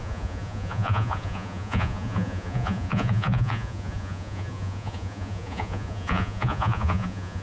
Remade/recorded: remade